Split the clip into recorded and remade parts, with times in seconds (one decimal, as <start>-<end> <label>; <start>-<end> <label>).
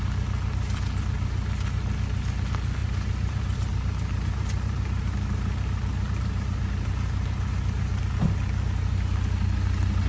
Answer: 0.0-2.8 recorded; 2.8-8.0 remade; 8.0-10.1 recorded